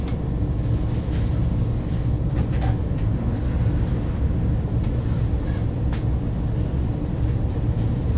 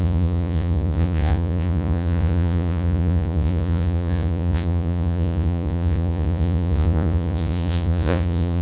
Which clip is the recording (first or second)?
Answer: first